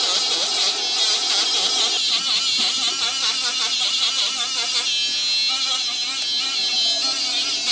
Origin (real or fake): real